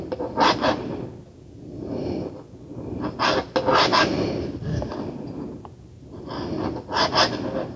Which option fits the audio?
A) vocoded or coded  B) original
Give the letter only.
B